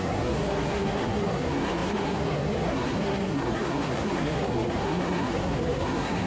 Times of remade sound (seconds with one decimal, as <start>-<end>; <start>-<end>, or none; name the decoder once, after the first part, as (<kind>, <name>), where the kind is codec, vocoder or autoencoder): 0.0-6.3 (codec, SNAC)